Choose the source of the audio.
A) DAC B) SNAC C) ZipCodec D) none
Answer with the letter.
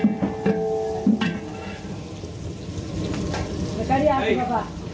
D